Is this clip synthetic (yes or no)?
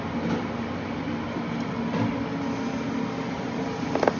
no